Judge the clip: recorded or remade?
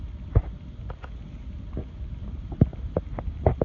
recorded